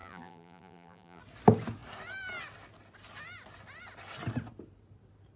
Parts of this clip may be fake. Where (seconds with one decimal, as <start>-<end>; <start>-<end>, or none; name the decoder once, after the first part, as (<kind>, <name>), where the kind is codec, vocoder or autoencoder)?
0.0-1.2 (vocoder, BigVGAN v2)